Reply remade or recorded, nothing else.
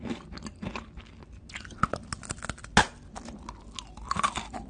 recorded